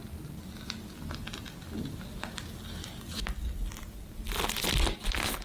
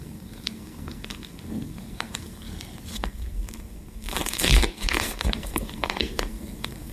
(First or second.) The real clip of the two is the first